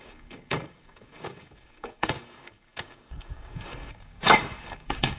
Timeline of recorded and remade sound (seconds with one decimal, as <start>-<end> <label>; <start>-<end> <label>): 0.0-5.2 remade